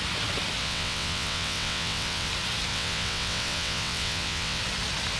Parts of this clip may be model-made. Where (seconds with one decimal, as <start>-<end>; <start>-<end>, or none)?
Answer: 0.6-2.3; 2.7-4.6